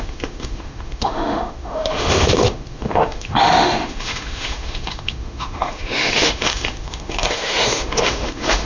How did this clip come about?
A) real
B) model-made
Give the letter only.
B